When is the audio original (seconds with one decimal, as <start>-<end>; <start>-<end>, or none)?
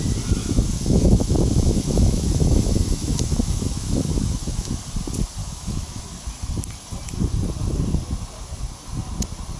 0.0-0.4; 4.8-5.4; 6.0-9.6